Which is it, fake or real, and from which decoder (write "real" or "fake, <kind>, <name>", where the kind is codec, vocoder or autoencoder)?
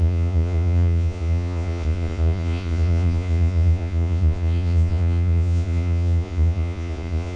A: fake, vocoder, Vocos